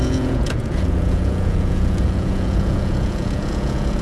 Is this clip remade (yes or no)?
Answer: yes